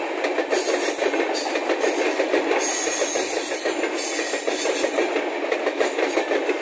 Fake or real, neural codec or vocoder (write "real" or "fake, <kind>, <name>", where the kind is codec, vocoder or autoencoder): real